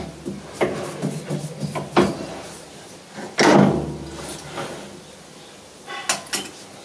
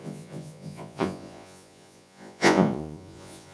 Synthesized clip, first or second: second